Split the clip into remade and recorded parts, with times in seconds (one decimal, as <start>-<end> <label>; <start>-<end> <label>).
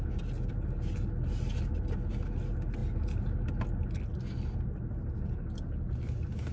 0.0-6.5 recorded